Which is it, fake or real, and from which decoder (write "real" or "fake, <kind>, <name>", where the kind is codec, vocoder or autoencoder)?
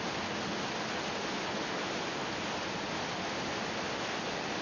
real